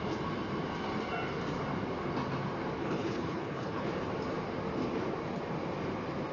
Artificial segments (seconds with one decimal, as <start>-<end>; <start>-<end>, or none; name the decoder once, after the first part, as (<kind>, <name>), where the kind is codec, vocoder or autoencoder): 2.8-3.9 (codec, HILCodec)